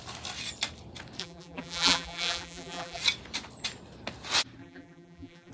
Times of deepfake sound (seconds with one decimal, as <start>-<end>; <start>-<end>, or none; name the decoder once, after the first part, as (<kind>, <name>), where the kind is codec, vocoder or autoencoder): 1.2-3.0 (vocoder, BigVGAN v2); 4.6-5.5